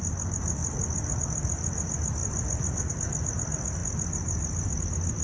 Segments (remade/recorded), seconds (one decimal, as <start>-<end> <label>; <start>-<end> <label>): 0.0-5.2 recorded